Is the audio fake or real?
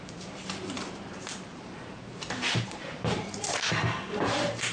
fake